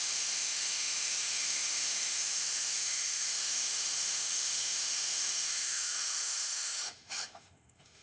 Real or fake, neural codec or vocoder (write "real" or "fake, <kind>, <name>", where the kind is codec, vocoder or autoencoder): fake, autoencoder, DAC-VAE